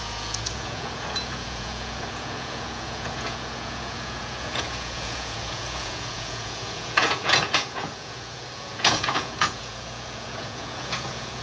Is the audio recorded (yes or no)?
no